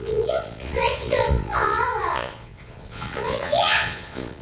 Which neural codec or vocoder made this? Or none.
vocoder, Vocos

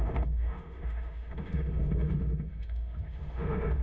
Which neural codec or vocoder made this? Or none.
autoencoder, DAC-VAE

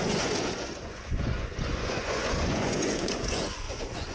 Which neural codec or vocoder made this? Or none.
vocoder, Vocos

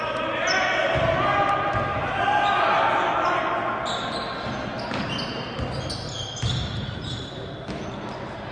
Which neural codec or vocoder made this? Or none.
none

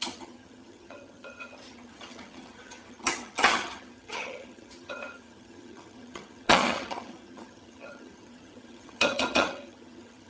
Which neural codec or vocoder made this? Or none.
vocoder, HiFi-GAN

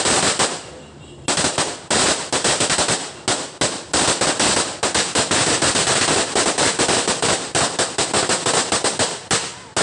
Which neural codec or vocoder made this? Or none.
none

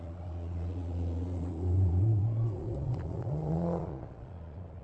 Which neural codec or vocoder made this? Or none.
vocoder, Vocos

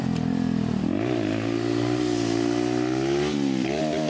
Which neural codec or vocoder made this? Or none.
none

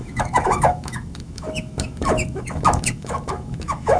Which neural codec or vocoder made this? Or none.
autoencoder, DAC-VAE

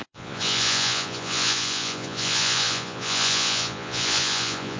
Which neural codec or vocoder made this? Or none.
vocoder, Vocos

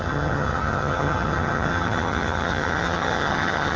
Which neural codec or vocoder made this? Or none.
vocoder, HiFi-GAN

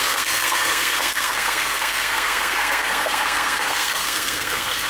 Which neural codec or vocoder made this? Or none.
codec, SNAC